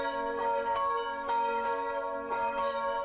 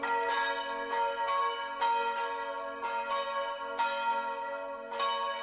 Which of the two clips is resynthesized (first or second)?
first